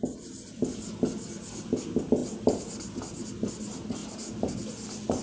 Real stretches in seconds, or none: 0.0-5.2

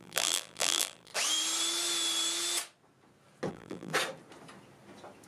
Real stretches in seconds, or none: 1.1-3.5; 3.9-5.3